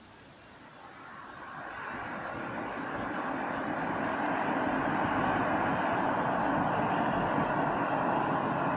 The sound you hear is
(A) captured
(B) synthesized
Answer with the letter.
A